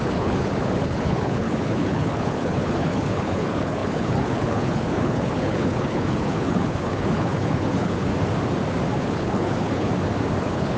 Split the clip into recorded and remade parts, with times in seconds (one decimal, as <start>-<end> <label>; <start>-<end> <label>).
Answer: 0.0-8.1 remade; 8.1-9.0 recorded; 9.0-9.9 remade; 9.9-10.4 recorded; 10.4-10.8 remade

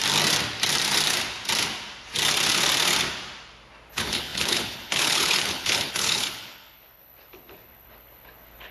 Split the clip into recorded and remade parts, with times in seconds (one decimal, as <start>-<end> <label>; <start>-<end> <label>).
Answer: 0.0-3.9 recorded; 3.9-8.7 remade

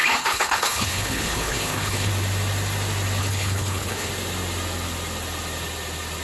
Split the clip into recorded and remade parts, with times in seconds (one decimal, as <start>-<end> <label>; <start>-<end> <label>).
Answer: 0.0-2.1 remade; 2.1-3.2 recorded; 3.2-4.1 remade; 4.1-6.2 recorded

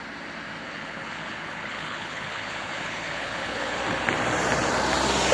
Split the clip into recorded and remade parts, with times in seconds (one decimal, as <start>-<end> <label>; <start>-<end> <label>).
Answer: 0.0-0.6 recorded; 0.6-3.8 remade; 3.8-5.3 recorded